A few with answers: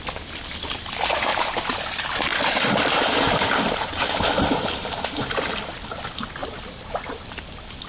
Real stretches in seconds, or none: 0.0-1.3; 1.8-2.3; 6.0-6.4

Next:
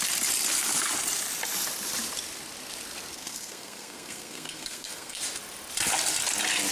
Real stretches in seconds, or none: 0.0-3.1; 5.2-6.7